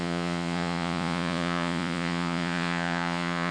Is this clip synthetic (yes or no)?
yes